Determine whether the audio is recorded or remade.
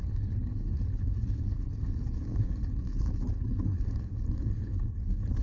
remade